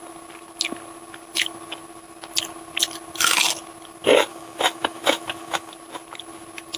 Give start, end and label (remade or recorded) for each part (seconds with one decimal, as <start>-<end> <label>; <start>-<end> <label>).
0.0-4.3 recorded; 4.3-5.7 remade; 5.7-6.8 recorded